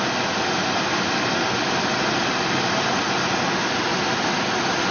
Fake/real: real